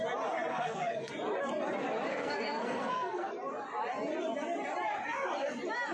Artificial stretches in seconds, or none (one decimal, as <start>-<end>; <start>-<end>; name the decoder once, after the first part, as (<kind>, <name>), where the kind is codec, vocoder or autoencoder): 0.5-1.1 (codec, SNAC); 2.1-3.3